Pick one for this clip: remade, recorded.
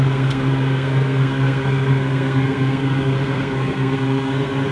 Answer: remade